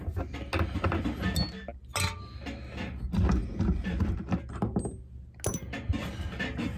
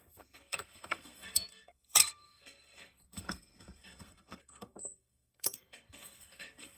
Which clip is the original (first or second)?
first